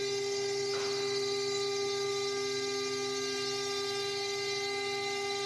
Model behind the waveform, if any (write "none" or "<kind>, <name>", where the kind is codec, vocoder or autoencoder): none